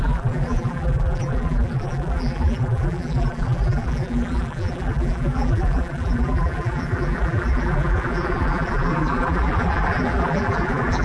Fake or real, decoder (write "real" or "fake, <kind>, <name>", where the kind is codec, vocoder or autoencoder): fake, vocoder, BigVGAN v2